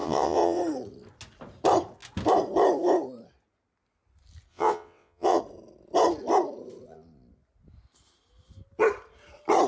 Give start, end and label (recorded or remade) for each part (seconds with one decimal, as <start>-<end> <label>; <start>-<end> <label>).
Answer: 0.0-0.6 remade; 0.6-4.5 recorded; 4.5-5.4 remade; 5.4-9.7 recorded